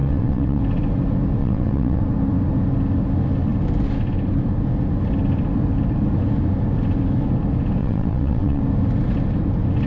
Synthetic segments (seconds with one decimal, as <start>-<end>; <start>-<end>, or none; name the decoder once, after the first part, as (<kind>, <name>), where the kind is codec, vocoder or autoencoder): 0.0-0.6 (vocoder, WaveNeXt); 1.4-2.0; 7.8-8.6